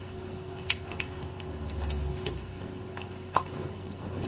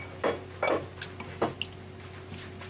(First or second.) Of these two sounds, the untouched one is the second